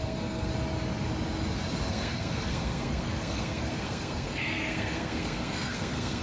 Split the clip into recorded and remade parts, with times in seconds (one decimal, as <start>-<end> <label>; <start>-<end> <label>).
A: 0.0-0.5 remade; 0.5-1.9 recorded; 1.9-6.2 remade